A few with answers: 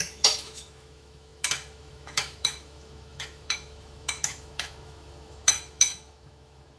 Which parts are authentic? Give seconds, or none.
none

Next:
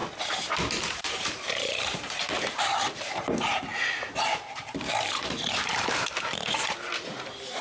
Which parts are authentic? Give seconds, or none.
0.0-0.9

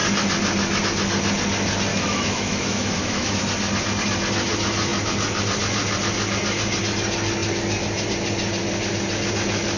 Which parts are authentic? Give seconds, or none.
0.0-1.9; 3.4-9.8

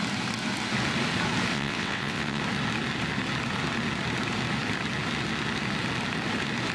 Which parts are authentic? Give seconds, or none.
0.0-1.5; 2.4-6.7

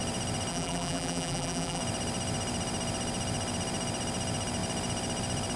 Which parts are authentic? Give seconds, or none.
0.0-0.5; 1.8-5.6

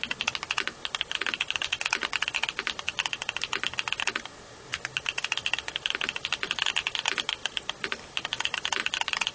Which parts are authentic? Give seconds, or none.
0.0-7.4; 8.8-9.3